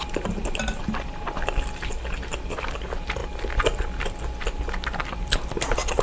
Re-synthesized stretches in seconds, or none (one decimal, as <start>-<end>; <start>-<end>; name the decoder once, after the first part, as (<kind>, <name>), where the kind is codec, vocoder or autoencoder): none